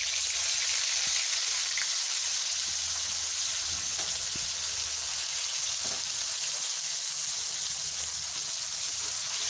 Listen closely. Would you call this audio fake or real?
real